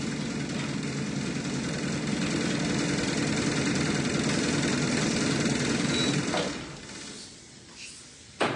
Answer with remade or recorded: recorded